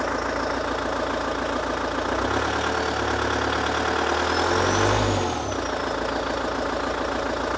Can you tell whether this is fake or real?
real